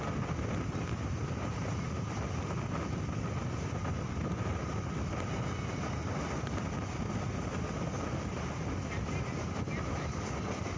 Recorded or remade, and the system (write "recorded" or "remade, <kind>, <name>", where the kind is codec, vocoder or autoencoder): recorded